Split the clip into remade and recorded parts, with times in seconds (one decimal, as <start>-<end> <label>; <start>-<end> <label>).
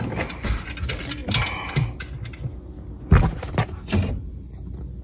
0.0-5.0 recorded